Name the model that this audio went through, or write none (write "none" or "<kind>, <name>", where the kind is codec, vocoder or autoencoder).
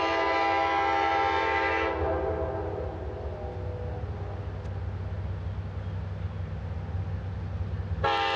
none